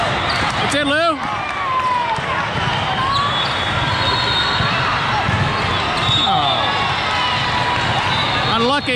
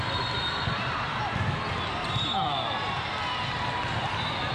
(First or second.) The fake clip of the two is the second